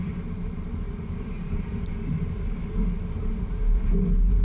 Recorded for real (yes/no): no